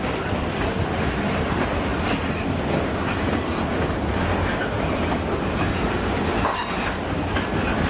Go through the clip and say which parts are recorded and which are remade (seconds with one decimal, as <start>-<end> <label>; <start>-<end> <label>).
0.0-7.9 recorded